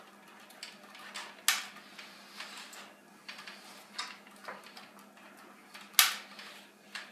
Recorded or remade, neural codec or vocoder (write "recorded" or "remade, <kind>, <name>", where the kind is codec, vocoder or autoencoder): recorded